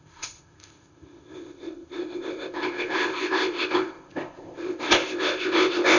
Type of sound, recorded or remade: remade